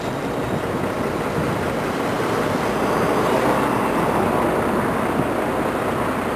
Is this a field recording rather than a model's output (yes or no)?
no